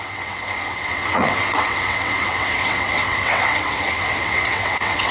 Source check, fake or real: fake